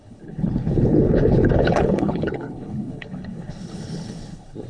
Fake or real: fake